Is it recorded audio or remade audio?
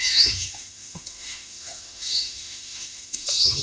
remade